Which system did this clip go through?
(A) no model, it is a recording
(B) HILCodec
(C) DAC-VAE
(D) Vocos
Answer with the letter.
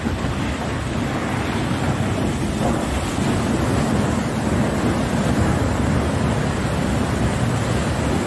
A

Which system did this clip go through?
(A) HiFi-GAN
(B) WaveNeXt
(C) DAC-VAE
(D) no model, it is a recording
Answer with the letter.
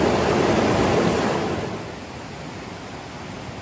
D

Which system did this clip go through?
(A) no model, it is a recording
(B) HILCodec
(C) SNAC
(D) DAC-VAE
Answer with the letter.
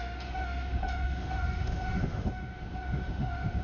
D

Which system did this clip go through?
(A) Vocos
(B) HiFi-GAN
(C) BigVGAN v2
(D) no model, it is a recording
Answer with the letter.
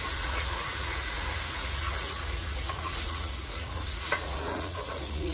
A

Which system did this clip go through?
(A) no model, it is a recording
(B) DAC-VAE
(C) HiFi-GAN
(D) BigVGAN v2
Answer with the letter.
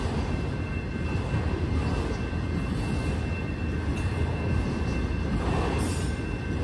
A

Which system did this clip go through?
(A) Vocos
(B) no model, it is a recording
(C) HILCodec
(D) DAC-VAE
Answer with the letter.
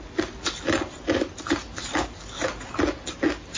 B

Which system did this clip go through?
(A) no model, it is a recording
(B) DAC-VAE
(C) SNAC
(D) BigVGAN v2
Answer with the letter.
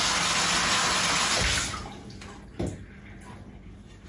A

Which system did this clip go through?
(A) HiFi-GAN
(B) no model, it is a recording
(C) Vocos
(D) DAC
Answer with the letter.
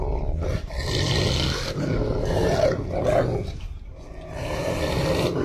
B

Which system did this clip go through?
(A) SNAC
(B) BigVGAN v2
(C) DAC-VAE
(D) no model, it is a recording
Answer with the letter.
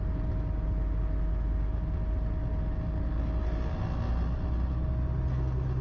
D